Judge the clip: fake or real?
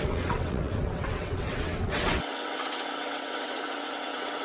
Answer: fake